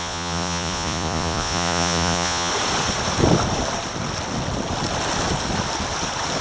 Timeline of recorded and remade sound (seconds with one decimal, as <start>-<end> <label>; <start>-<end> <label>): 0.0-2.5 remade; 2.5-6.4 recorded